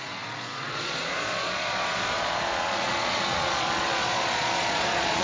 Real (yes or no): no